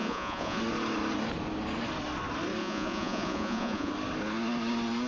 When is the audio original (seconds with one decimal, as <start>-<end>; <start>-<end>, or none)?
0.6-2.6; 3.9-5.1